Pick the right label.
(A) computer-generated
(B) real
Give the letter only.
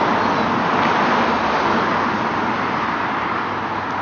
B